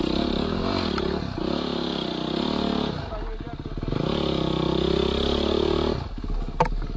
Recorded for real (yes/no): yes